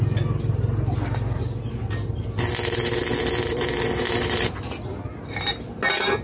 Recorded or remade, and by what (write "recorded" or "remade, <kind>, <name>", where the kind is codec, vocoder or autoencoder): recorded